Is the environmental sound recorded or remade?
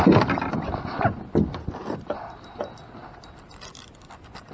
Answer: recorded